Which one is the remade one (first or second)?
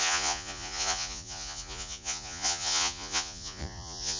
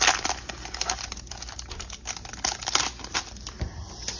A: first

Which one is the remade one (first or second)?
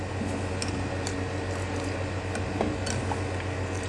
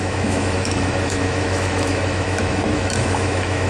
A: second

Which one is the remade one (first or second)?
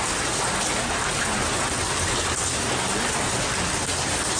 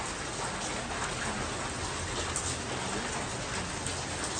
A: first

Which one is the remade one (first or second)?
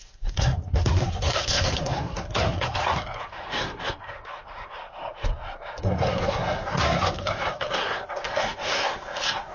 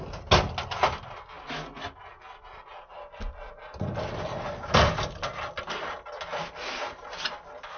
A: first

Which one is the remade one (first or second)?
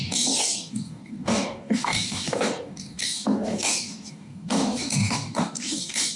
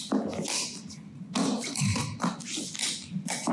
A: first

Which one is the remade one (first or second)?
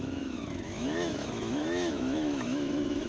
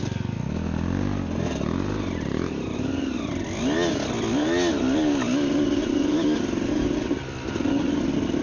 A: first